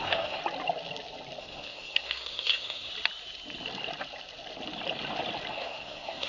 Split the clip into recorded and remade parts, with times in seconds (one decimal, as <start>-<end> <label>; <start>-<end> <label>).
0.0-0.4 remade; 0.4-1.4 recorded; 1.4-2.9 remade; 2.9-5.5 recorded; 5.5-6.3 remade